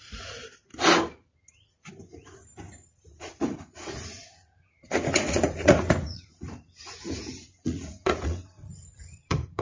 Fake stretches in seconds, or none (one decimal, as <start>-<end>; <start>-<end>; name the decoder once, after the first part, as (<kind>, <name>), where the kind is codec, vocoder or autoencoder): 0.0-0.4 (vocoder, Vocos); 3.4-9.6